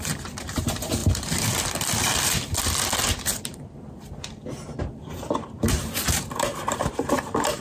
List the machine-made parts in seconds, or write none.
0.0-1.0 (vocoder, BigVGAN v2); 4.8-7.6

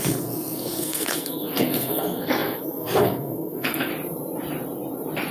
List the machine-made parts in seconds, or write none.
0.0-3.9 (codec, SNAC)